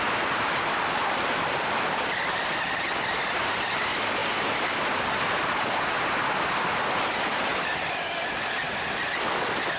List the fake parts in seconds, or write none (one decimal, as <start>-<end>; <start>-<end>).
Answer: none